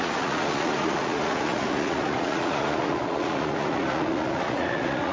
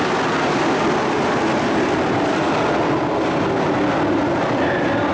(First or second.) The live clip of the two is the second